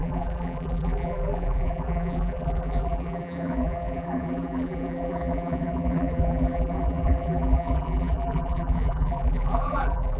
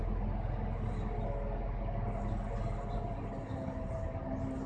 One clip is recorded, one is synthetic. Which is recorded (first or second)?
second